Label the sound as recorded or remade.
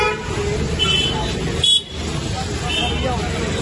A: recorded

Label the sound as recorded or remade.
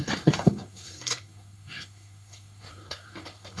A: remade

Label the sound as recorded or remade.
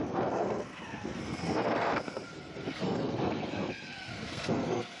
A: remade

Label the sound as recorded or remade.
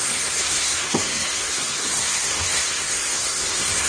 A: remade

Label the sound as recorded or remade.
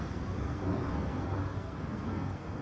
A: remade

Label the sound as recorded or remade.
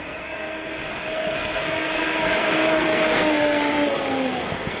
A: remade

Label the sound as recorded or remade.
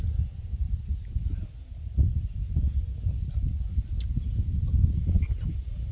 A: recorded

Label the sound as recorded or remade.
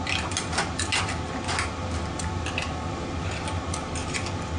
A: recorded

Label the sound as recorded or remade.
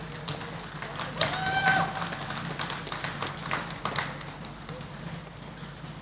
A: recorded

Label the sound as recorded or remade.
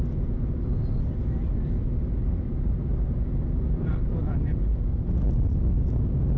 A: recorded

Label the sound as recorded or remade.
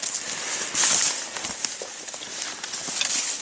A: recorded